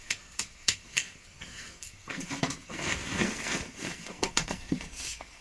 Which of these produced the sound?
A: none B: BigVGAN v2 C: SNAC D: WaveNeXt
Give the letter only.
C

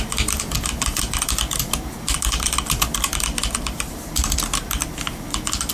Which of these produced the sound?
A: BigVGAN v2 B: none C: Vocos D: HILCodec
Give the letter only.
B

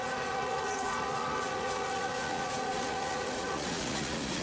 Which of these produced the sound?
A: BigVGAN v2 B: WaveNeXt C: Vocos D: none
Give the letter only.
C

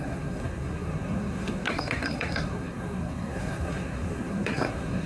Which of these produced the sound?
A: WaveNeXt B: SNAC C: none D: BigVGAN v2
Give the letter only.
B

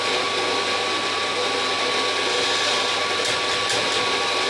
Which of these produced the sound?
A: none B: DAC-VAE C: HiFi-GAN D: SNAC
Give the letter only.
A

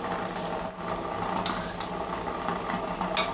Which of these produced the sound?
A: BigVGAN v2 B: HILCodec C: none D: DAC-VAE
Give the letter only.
C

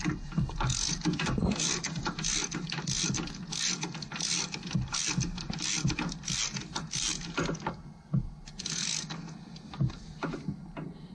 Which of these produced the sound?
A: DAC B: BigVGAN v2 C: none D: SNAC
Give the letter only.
C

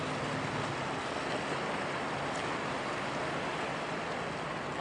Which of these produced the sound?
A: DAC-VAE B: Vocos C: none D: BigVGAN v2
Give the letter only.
C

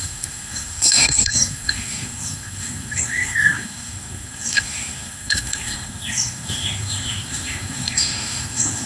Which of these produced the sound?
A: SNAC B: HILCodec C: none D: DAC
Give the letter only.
A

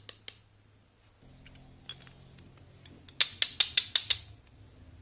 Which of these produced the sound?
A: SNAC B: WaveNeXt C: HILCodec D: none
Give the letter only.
D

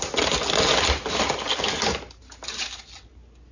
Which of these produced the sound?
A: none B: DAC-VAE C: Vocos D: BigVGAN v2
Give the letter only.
A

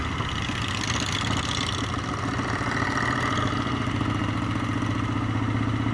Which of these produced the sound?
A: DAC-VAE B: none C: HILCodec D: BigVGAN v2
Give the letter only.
B